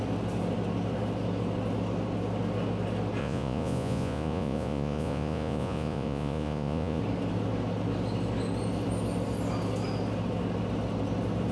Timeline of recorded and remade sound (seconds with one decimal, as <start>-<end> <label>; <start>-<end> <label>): 0.0-3.2 recorded; 3.2-7.0 remade; 7.0-11.5 recorded